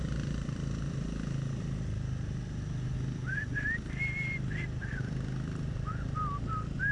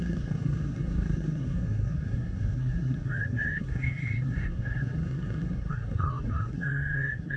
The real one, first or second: first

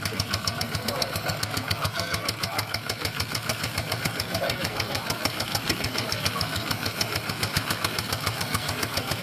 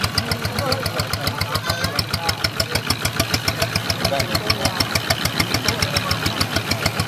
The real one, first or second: second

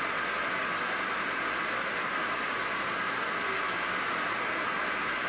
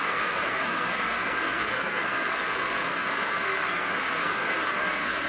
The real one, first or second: first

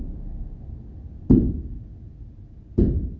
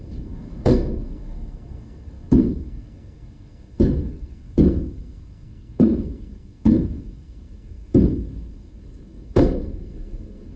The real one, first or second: first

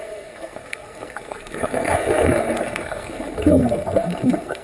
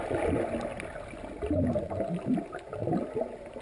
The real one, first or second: second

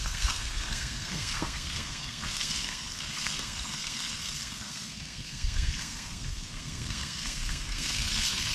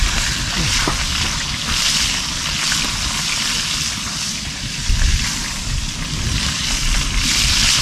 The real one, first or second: second